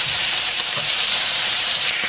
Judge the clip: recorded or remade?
remade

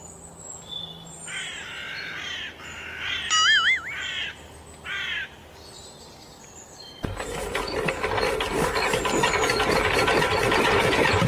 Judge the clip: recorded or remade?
recorded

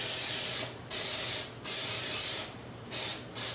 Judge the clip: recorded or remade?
remade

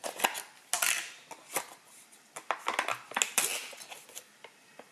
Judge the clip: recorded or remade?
recorded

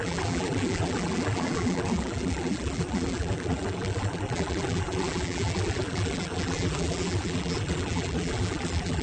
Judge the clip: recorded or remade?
remade